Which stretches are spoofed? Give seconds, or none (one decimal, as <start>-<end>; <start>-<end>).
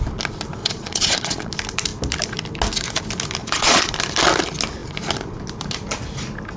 0.6-1.5; 3.4-3.9